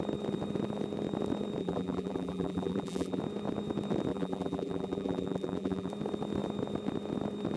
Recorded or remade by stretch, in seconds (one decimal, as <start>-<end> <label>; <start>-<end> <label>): 0.0-1.6 recorded; 1.6-3.2 remade; 3.2-4.1 recorded; 4.1-5.9 remade; 5.9-7.6 recorded

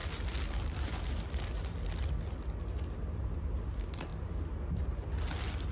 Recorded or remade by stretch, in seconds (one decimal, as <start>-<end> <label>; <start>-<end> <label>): 0.0-5.7 recorded

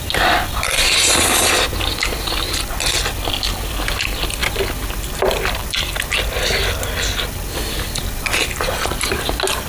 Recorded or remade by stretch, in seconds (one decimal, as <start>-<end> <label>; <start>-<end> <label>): 0.0-9.7 recorded